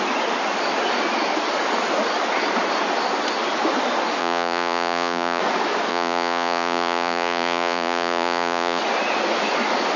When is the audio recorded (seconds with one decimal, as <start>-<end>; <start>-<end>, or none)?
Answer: 0.0-4.2; 5.4-5.9; 8.8-10.0